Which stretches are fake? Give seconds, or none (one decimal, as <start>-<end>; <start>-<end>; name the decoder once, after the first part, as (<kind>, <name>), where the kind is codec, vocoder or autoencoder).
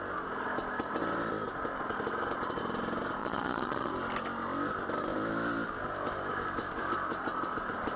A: 3.2-3.9 (vocoder, Vocos)